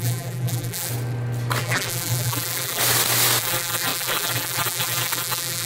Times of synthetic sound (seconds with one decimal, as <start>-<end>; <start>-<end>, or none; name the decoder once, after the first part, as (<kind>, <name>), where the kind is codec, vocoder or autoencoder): 0.0-0.9 (vocoder, BigVGAN v2); 1.6-2.8; 3.4-5.7